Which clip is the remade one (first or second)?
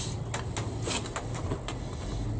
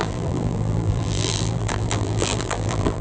second